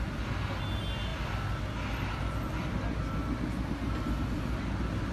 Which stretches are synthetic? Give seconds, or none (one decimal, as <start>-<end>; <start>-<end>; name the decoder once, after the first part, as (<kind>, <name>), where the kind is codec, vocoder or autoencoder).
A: none